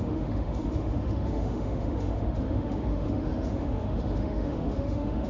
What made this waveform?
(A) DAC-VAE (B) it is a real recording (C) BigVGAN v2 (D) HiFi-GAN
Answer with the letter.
A